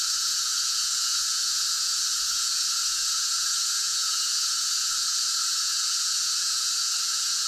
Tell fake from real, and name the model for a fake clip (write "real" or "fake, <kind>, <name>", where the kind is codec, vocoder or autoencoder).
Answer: fake, vocoder, Vocos